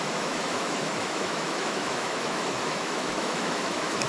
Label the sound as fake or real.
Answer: fake